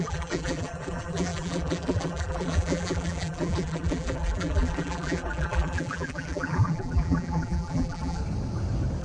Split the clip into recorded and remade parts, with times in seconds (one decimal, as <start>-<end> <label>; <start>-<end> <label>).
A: 0.0-8.2 remade; 8.2-9.0 recorded